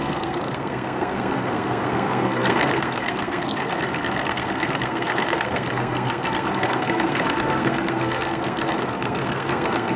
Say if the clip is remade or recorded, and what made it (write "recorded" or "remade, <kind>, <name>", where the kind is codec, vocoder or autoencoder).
remade, codec, SNAC